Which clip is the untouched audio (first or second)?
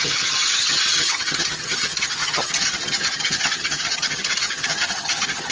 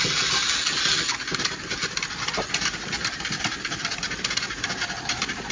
second